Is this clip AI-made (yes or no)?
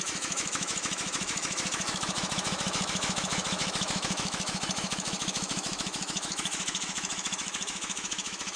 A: yes